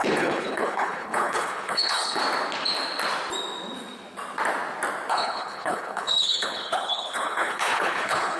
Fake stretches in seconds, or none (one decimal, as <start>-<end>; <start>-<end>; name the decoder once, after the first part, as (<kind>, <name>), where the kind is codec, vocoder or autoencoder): 0.0-2.2 (codec, HILCodec); 5.1-8.4